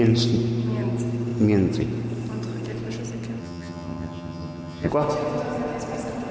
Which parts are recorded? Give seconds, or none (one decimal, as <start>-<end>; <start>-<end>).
0.0-3.4; 4.9-6.3